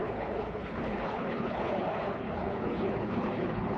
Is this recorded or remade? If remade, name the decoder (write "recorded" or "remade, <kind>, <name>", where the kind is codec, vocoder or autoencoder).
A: remade, codec, HILCodec